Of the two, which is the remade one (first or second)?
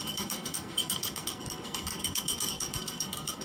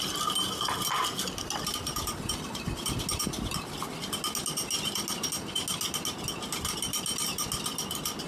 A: first